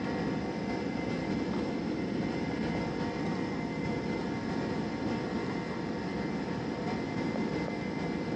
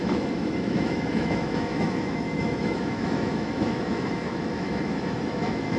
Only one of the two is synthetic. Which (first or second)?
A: second